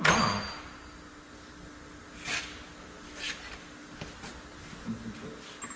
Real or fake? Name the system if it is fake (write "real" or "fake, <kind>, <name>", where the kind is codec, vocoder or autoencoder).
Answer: real